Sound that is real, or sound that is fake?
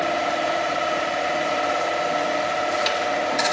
fake